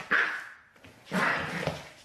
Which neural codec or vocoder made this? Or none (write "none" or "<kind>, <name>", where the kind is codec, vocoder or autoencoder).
none